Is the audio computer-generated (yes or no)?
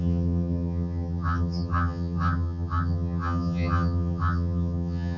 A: yes